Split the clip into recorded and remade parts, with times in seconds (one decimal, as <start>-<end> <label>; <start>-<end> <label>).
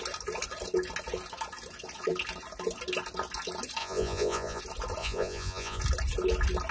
0.0-3.8 recorded; 3.8-4.6 remade; 4.6-5.0 recorded; 5.0-5.8 remade; 5.8-6.7 recorded